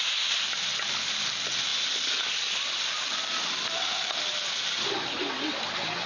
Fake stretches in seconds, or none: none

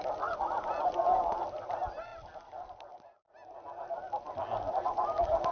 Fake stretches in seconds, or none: none

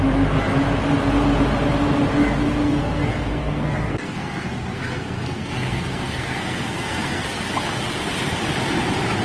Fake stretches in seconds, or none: 2.6-7.5 (codec, SNAC)

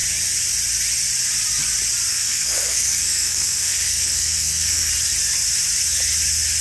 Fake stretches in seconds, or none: 2.1-4.9 (codec, SNAC)

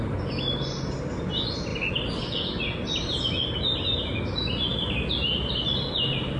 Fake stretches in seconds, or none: none

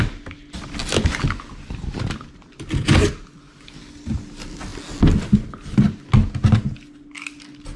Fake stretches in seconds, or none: none